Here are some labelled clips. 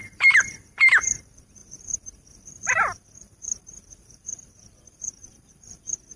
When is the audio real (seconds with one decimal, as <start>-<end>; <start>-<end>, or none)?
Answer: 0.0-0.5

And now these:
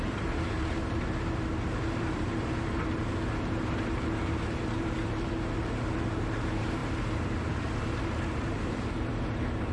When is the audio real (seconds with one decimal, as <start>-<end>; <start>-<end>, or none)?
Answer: none

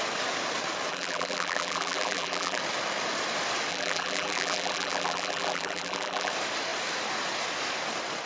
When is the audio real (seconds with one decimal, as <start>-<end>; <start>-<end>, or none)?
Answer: 0.0-0.9; 2.6-3.7; 6.3-8.3

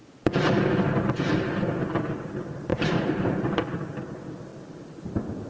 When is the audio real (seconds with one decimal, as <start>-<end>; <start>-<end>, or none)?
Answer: 0.0-2.7; 3.8-4.5; 5.0-5.5

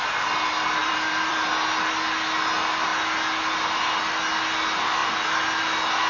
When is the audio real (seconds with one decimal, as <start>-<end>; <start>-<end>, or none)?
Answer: 0.0-0.8; 1.5-6.1

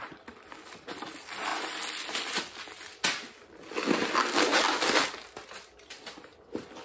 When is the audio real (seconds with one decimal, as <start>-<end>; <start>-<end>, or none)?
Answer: 0.0-6.8

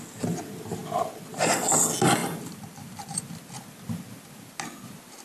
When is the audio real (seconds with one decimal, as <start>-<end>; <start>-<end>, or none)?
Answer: 0.0-2.2; 3.2-5.2

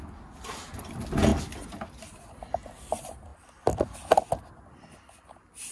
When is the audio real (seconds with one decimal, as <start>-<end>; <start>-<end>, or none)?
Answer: 0.0-5.7